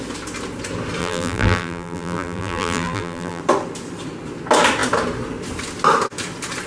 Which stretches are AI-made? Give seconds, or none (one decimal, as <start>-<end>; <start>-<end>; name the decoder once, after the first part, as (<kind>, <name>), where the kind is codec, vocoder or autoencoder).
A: 1.0-3.4 (vocoder, BigVGAN v2)